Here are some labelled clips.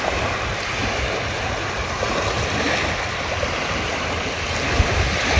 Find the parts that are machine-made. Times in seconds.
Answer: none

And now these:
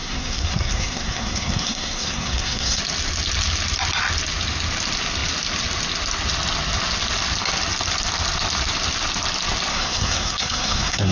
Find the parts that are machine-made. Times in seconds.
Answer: 0.0-2.8 (codec, SNAC); 9.7-11.1

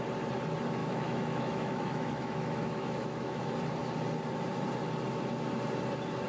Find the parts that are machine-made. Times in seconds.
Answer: 0.8-3.4 (autoencoder, DAC-VAE)

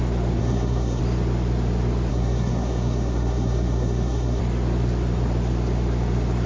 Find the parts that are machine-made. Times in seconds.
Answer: 0.4-1.0 (codec, SNAC); 2.1-4.4

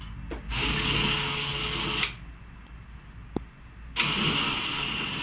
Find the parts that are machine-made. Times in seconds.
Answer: none